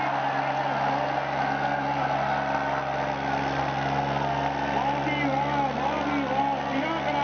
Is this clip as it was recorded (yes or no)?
yes